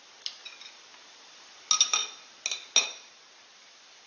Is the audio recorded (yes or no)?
yes